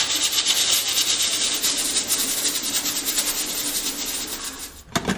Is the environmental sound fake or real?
real